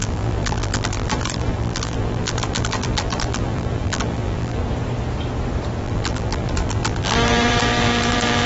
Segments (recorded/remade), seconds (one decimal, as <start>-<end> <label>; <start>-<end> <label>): 0.0-4.6 remade; 4.6-5.8 recorded; 5.8-8.5 remade